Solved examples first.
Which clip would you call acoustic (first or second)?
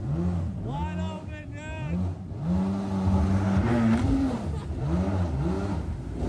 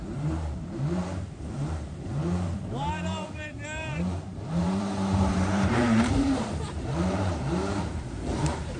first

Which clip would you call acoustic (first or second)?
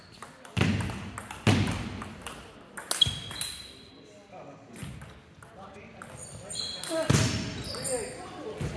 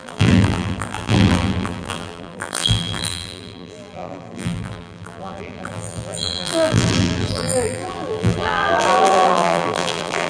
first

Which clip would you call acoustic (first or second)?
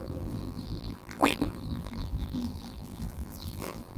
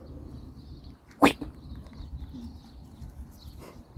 second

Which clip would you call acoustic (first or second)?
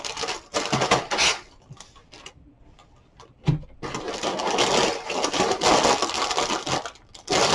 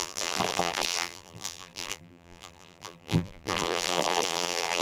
first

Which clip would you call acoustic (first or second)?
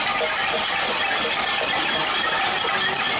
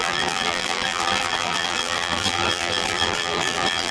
first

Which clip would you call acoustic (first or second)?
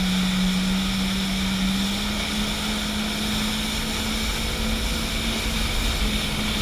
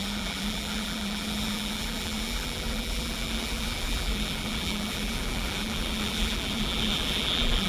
first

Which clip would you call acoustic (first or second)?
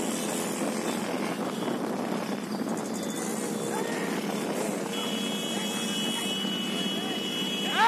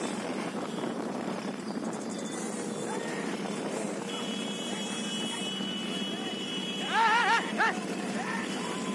first